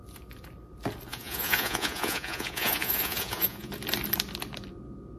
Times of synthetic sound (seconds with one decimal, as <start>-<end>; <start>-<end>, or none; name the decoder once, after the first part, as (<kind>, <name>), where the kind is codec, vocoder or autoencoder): 1.1-3.7 (vocoder, Vocos)